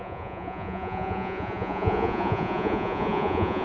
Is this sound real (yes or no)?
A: no